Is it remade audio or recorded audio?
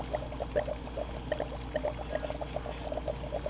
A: recorded